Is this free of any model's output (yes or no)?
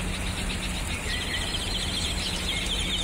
yes